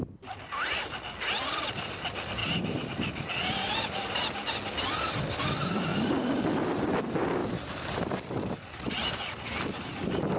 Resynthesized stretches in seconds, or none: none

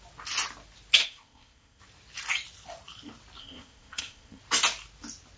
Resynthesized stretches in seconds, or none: 1.0-1.8 (codec, ZipCodec); 3.4-4.4

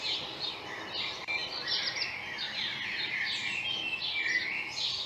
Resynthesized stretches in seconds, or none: none

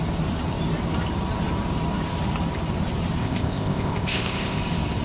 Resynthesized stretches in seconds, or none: 3.2-4.6 (codec, ZipCodec)

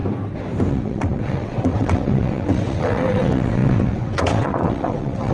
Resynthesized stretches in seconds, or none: 0.7-5.3 (vocoder, WaveNeXt)

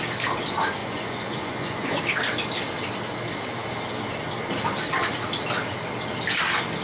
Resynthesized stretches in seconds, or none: 0.8-2.0 (vocoder, Vocos)

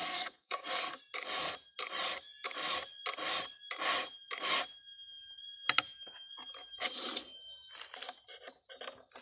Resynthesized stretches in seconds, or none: 0.0-1.0 (codec, SNAC)

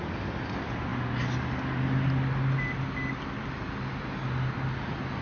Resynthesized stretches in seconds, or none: none